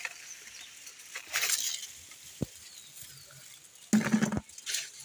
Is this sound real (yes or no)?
yes